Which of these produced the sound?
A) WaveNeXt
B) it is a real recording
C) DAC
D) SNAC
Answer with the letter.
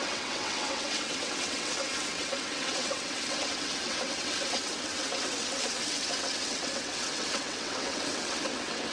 A